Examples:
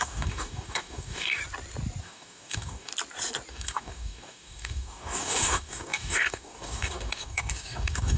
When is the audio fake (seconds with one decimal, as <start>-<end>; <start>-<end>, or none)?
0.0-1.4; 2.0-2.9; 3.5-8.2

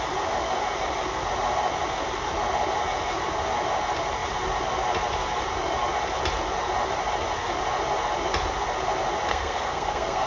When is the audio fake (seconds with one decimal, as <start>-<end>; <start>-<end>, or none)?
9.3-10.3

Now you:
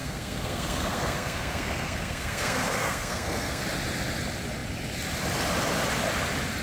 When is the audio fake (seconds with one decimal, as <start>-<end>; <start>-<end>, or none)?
0.0-3.6

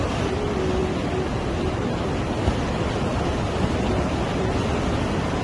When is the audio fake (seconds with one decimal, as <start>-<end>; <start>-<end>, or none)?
none